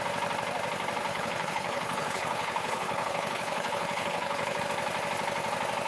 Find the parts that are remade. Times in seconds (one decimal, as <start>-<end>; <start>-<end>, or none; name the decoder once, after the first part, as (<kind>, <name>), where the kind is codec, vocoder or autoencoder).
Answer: 1.1-4.6 (codec, HILCodec)